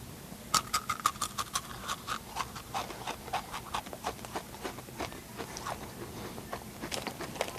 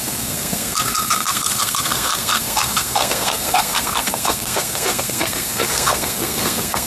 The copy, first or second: second